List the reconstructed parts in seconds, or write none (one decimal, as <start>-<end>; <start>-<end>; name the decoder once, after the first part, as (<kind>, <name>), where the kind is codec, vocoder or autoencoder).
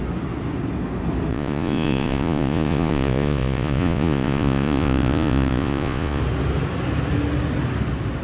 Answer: 1.3-6.2 (vocoder, Vocos)